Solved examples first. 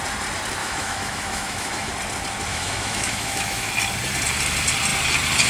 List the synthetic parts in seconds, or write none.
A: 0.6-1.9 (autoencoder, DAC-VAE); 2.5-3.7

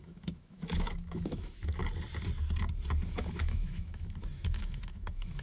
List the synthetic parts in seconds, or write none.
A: 0.0-1.8 (autoencoder, DAC-VAE); 3.1-5.4

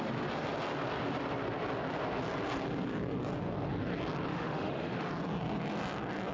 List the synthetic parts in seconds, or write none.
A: 4.3-5.1 (autoencoder, DAC-VAE)

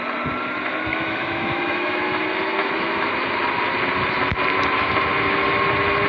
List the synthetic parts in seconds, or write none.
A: 0.9-2.0 (autoencoder, DAC-VAE); 2.6-3.1

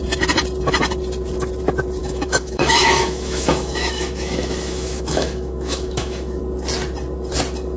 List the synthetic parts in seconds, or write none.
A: 2.0-6.4 (autoencoder, DAC-VAE)

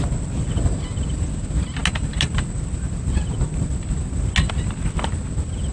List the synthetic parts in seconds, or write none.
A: none